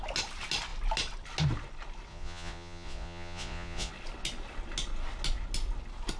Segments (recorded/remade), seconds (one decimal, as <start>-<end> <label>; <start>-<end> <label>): 0.0-2.1 recorded; 2.1-3.9 remade; 3.9-6.2 recorded